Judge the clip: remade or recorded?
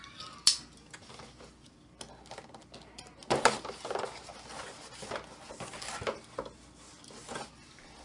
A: recorded